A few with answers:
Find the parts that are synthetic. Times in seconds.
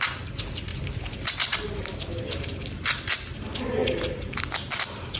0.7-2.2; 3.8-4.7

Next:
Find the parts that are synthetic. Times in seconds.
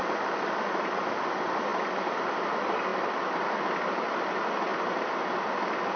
1.7-2.2; 2.9-3.6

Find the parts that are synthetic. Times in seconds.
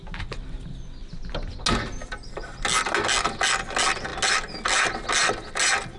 2.0-2.6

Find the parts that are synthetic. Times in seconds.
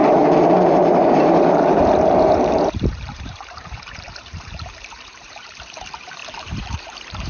0.0-7.3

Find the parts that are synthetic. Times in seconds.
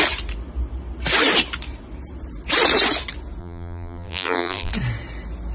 3.4-4.7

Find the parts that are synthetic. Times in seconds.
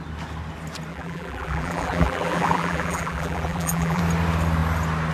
0.9-4.0